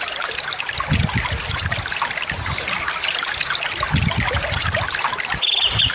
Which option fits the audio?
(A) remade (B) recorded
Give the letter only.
B